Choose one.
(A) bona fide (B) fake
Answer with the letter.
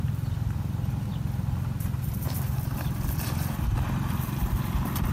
A